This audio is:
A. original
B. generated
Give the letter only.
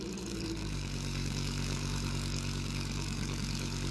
B